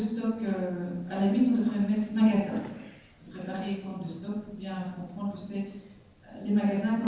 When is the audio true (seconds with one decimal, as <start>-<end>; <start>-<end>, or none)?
0.0-7.1

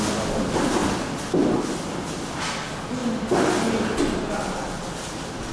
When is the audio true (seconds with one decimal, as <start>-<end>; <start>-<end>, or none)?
0.0-0.8; 2.4-5.5